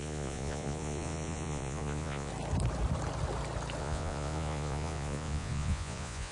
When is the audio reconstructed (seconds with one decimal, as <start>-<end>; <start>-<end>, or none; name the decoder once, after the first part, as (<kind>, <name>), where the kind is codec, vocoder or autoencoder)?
0.0-2.3 (vocoder, Vocos); 3.8-6.3